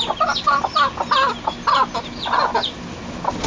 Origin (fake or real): real